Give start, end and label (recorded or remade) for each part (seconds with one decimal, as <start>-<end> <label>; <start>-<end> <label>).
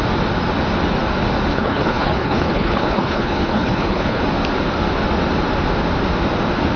0.0-1.5 recorded; 1.5-4.2 remade; 4.2-6.8 recorded